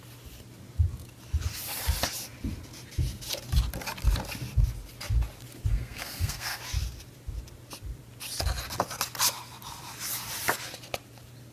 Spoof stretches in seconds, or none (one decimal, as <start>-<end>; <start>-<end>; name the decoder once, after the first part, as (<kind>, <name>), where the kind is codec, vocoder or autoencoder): 5.7-6.6 (codec, SNAC)